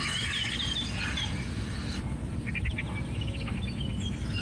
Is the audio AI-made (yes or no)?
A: no